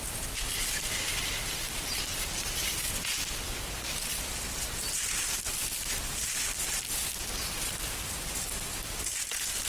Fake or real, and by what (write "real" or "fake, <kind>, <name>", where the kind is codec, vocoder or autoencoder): fake, vocoder, BigVGAN v2